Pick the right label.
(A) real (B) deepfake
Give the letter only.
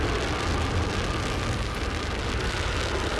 A